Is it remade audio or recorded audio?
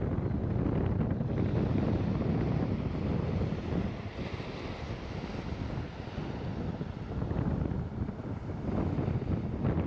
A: recorded